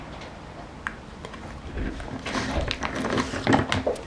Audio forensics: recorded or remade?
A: recorded